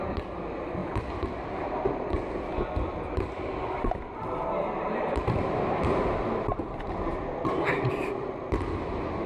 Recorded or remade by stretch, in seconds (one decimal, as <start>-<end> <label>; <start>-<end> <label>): 0.0-9.3 recorded